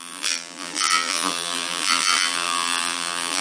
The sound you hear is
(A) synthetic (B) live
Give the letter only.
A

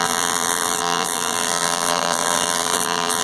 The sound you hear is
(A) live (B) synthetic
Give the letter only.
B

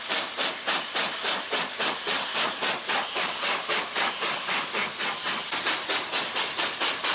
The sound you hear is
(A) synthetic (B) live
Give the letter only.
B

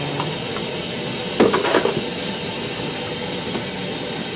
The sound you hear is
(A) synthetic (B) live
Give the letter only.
B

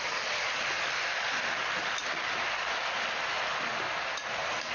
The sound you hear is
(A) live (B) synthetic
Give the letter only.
A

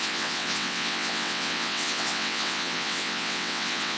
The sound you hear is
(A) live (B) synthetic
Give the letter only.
B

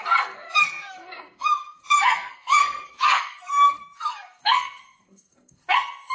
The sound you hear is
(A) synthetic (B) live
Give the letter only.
A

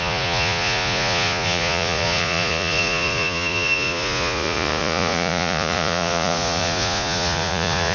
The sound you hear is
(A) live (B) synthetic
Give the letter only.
B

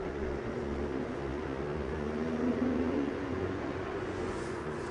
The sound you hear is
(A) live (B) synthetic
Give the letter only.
B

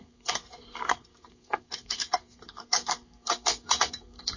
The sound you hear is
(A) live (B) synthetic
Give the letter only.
B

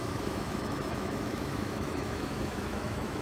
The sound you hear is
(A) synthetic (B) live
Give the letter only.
A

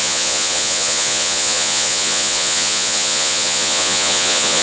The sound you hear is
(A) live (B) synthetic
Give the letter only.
B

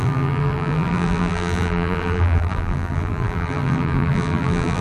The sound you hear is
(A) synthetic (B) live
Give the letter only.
A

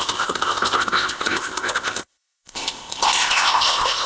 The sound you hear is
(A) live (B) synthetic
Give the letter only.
B